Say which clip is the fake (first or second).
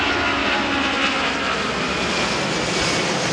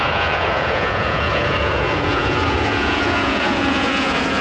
second